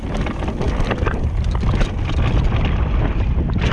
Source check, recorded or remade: recorded